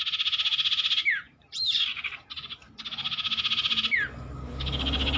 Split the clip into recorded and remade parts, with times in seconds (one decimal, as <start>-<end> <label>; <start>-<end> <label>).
0.0-4.4 recorded; 4.4-5.2 remade